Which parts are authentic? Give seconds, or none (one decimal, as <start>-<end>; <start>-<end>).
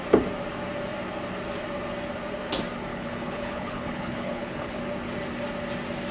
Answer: 0.0-2.9; 4.8-6.1